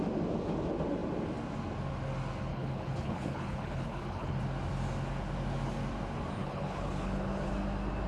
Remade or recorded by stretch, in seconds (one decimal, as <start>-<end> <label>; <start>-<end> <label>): 0.0-2.5 recorded; 2.5-4.4 remade; 4.4-6.4 recorded; 6.4-7.5 remade; 7.5-8.1 recorded